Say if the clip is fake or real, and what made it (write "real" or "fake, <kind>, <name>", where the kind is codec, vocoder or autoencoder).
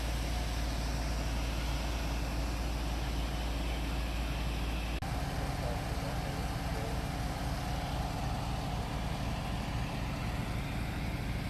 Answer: real